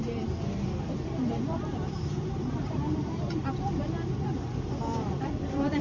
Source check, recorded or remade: remade